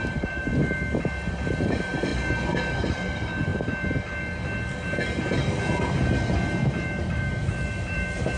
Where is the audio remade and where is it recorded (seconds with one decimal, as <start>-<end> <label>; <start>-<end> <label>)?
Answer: 0.0-0.5 remade; 0.5-1.5 recorded; 1.5-2.1 remade; 2.1-2.7 recorded; 2.7-3.5 remade; 3.5-7.0 recorded; 7.0-8.4 remade